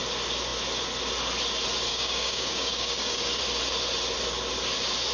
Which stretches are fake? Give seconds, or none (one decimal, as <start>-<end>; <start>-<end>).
1.9-3.4